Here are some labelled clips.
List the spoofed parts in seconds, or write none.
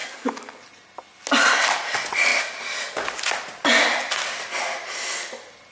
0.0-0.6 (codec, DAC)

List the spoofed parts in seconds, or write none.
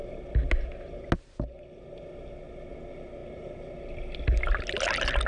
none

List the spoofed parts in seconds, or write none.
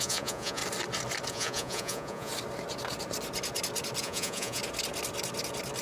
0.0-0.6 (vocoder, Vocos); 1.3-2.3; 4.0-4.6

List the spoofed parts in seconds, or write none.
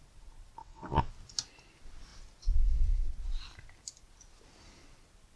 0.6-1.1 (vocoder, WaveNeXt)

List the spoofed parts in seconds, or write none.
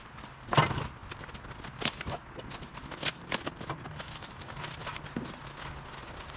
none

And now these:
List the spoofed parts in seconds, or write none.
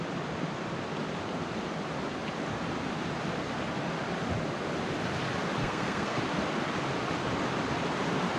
5.6-6.2 (codec, SNAC)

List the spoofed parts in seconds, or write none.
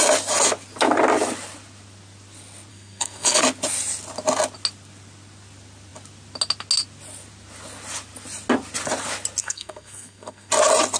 2.7-3.4 (codec, SNAC); 9.4-10.5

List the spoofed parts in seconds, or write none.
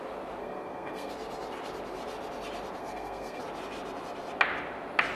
0.4-1.1 (codec, SNAC); 2.8-3.4